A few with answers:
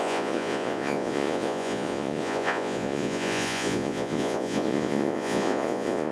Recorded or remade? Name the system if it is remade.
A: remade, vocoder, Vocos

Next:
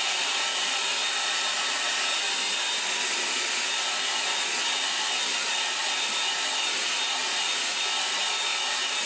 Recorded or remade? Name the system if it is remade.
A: recorded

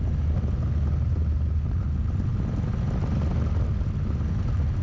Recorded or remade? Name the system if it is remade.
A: recorded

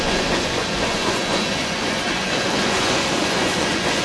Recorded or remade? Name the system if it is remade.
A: remade, vocoder, Vocos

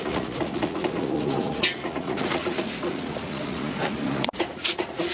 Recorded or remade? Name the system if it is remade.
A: remade, vocoder, Vocos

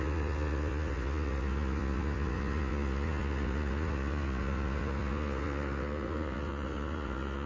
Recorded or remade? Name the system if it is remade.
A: remade, vocoder, Vocos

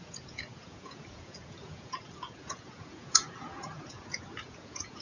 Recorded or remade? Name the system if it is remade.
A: remade, vocoder, Vocos